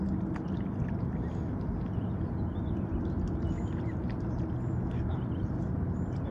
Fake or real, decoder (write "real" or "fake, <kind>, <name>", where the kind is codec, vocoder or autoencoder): real